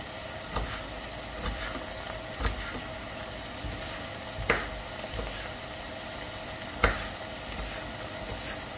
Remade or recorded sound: recorded